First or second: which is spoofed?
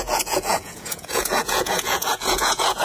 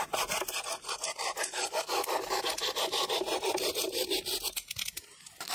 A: first